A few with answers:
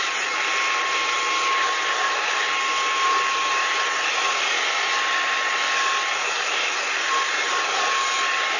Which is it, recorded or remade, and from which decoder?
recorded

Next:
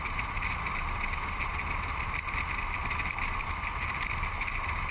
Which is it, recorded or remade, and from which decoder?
recorded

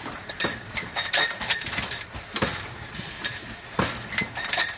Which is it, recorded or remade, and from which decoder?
recorded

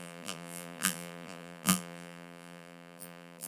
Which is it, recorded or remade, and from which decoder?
remade, vocoder, BigVGAN v2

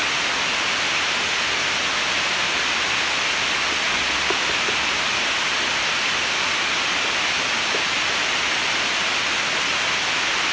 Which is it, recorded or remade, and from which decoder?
recorded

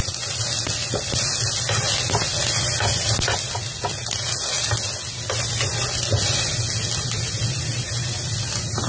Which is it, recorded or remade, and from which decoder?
recorded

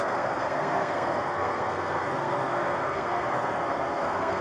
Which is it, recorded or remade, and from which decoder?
remade, codec, SNAC